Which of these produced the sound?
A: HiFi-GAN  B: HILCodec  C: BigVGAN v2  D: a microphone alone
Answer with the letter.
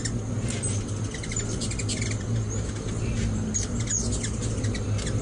D